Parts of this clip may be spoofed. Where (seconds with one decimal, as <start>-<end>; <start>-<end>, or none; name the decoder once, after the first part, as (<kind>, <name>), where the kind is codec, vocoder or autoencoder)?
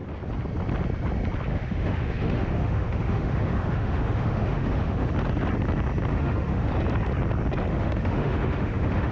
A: 1.5-5.1 (autoencoder, DAC-VAE); 6.1-6.7; 7.7-9.1